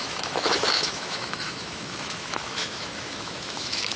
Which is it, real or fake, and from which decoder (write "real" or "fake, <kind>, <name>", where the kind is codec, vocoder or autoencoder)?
fake, autoencoder, DAC-VAE